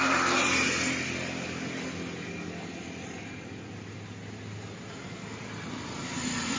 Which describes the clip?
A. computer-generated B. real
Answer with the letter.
B